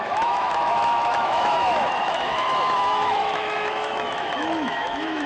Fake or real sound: fake